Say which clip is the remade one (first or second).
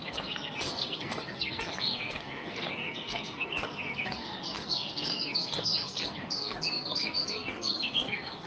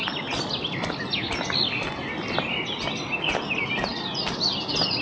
first